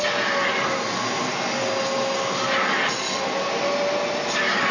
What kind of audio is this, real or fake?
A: real